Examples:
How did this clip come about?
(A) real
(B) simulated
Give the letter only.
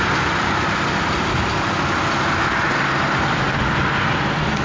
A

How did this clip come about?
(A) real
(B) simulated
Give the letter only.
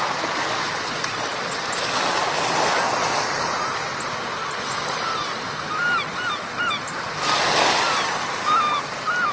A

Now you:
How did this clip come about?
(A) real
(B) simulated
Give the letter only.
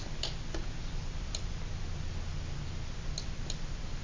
A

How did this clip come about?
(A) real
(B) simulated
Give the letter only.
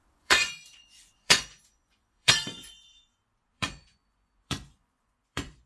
B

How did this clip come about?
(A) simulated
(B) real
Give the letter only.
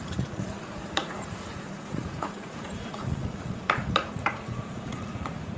A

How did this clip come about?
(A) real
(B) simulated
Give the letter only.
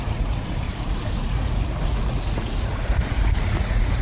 B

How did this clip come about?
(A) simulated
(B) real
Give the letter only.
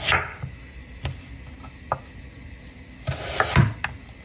B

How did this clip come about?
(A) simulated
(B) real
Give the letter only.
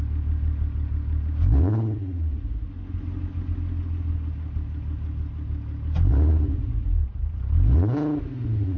B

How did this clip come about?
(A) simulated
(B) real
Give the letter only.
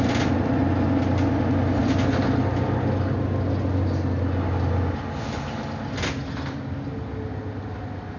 B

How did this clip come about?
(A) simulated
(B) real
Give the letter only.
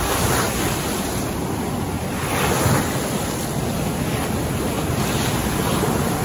B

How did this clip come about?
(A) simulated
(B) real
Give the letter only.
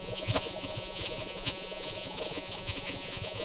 A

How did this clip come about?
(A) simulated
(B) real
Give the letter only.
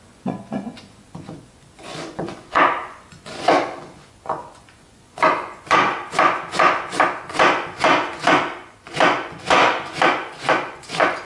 A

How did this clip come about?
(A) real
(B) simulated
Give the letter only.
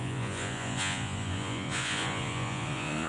B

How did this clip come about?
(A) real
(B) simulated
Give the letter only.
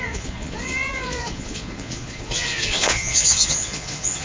B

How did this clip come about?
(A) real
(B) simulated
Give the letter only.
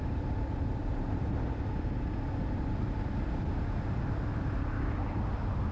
A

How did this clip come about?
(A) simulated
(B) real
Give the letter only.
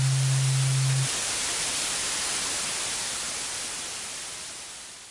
B